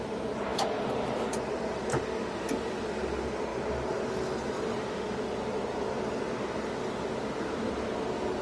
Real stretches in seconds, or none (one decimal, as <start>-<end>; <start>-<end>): 0.0-8.4